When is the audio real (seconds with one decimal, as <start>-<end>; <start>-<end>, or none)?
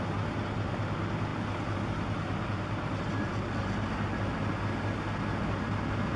0.0-6.2